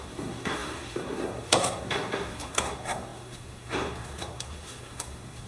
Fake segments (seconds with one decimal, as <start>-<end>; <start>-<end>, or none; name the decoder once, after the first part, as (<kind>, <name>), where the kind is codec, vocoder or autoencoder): 0.0-5.5 (codec, SNAC)